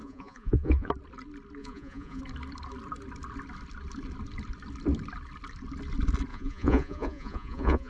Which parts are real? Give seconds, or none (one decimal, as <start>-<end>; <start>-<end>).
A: 0.9-1.6; 2.2-6.3